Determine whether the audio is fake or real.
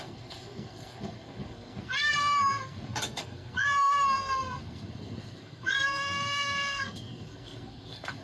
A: fake